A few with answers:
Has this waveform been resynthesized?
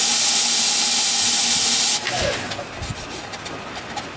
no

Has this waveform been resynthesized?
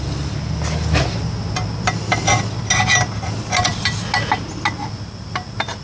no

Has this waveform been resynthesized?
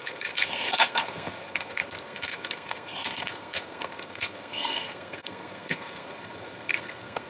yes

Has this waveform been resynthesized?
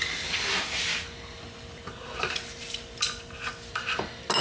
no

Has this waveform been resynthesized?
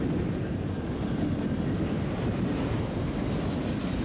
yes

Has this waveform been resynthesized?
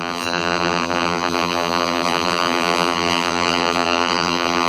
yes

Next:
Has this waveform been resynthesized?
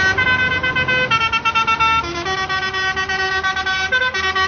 no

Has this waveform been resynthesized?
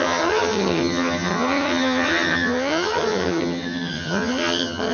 yes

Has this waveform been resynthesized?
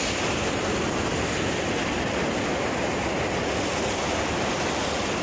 no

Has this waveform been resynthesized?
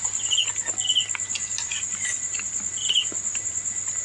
no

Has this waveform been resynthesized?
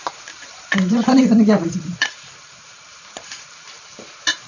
yes